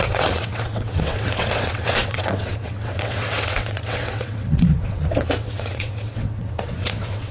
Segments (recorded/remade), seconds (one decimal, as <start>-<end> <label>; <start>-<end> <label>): 0.0-7.3 remade